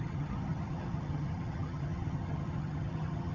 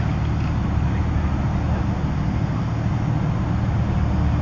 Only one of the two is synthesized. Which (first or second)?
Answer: first